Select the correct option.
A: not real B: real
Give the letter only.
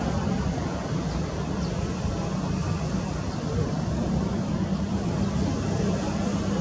B